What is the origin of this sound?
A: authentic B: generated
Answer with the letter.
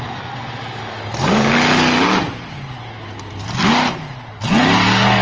A